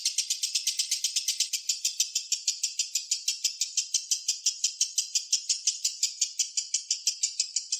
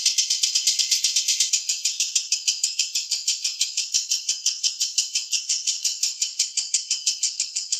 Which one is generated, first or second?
second